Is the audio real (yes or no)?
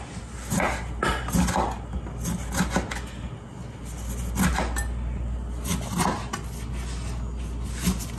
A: yes